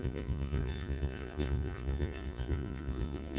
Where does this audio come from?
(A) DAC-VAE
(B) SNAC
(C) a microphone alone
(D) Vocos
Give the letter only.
D